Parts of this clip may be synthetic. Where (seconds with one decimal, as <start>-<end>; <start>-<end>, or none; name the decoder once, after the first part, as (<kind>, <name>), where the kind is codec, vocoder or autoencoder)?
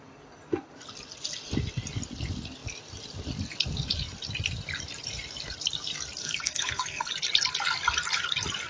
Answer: 6.2-7.1 (codec, SNAC)